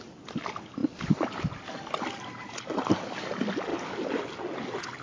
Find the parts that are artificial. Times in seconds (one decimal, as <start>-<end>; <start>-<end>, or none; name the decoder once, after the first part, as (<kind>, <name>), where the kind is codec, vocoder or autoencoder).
none

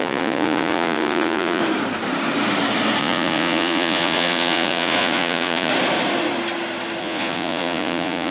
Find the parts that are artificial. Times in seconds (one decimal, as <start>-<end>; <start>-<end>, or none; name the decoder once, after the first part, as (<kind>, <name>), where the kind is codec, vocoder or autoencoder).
0.0-1.6 (vocoder, Vocos); 3.0-5.7; 7.0-8.3

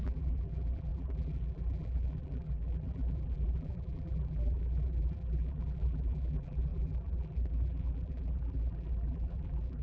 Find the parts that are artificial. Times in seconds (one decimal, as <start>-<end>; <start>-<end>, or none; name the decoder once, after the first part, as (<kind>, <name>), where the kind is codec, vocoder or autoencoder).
0.0-9.8 (vocoder, BigVGAN v2)